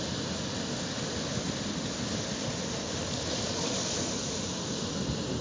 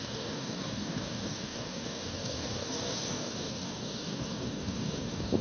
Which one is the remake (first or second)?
second